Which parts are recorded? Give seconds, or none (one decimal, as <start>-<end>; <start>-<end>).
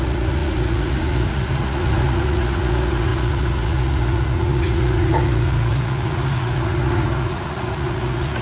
none